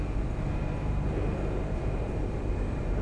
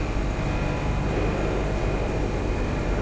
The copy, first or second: first